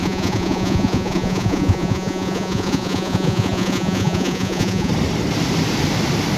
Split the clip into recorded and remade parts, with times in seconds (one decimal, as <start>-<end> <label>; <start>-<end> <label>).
0.0-4.9 remade; 4.9-6.4 recorded